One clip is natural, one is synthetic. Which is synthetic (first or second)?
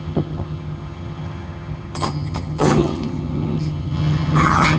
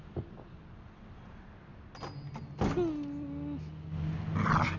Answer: first